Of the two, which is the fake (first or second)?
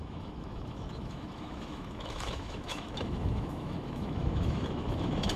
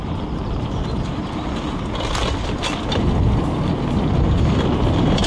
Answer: first